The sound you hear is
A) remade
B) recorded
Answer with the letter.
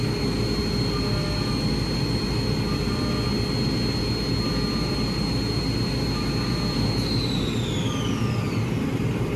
B